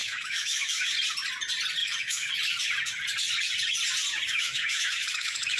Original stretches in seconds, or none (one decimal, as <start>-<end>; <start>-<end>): 0.9-1.8; 2.3-4.3